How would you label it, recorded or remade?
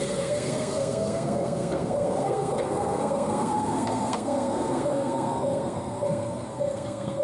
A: remade